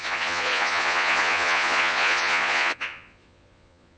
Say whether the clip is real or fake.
fake